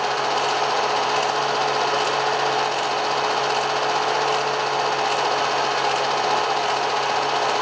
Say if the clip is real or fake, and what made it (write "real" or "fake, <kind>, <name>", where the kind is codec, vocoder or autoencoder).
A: real